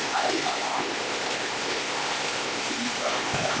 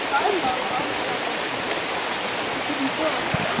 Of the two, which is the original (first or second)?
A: second